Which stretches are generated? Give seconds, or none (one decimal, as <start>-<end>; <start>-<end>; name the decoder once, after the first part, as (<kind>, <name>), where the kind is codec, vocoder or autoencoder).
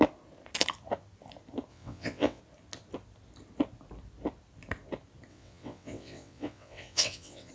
1.7-2.4 (vocoder, WaveNeXt); 5.3-7.5